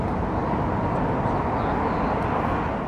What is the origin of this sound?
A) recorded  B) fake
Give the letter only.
A